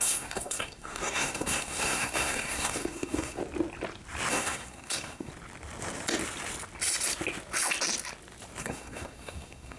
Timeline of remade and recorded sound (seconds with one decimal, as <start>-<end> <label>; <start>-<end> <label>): 0.0-3.4 remade; 3.4-4.3 recorded; 4.3-5.3 remade; 5.3-8.6 recorded; 8.6-9.8 remade